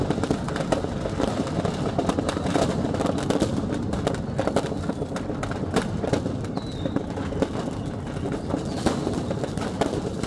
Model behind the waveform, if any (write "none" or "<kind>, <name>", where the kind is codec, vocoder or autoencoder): none